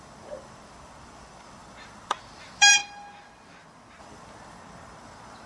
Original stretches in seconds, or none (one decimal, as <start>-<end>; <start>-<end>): 2.8-4.0